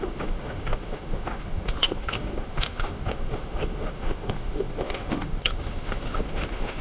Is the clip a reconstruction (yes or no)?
yes